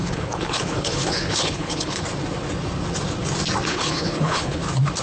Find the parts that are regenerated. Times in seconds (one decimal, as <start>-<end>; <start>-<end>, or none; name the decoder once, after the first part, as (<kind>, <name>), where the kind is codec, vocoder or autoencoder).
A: 0.0-2.0 (codec, HILCodec); 3.7-4.6